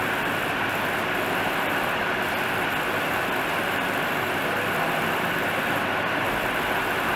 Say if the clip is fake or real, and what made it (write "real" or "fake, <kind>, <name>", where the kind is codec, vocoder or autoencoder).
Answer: real